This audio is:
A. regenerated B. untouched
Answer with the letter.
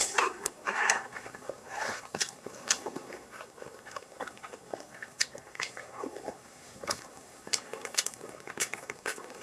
A